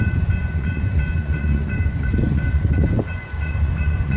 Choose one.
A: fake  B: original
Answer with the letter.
A